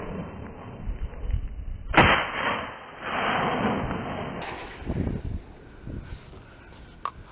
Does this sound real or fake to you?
real